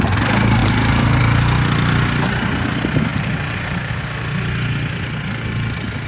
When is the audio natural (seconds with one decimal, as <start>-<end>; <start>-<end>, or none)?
0.0-0.6; 1.2-3.1; 3.9-6.1